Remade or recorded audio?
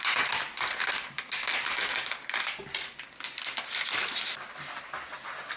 recorded